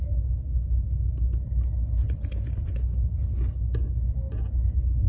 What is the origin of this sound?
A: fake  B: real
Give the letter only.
B